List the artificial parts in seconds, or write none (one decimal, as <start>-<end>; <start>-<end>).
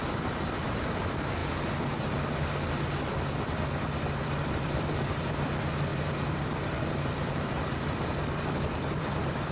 0.0-1.4; 2.7-9.5